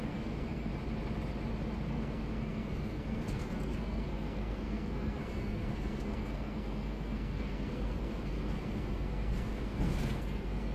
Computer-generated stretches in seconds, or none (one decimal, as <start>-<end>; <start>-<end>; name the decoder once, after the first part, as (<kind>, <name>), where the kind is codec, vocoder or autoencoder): 0.0-0.7 (codec, SNAC); 1.9-10.7